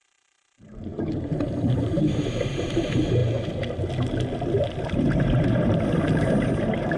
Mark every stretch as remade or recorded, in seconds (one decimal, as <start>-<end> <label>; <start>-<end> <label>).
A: 0.0-3.2 remade; 3.2-4.9 recorded; 4.9-7.0 remade